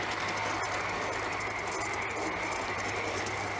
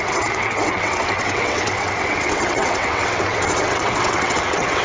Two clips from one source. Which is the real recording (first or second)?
first